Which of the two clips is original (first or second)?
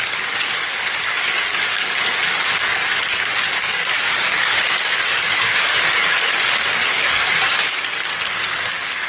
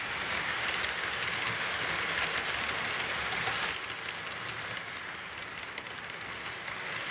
second